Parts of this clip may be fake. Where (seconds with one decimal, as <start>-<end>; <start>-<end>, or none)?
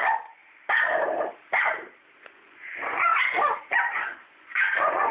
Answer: 0.0-0.4; 2.2-3.1; 3.7-5.1